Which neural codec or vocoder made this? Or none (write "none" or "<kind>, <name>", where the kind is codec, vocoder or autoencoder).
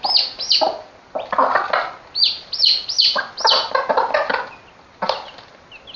none